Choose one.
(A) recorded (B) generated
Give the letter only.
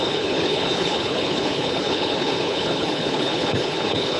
B